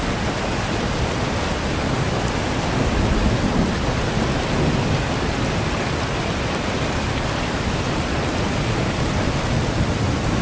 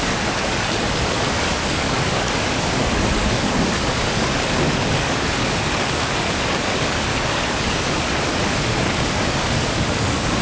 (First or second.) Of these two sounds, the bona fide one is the first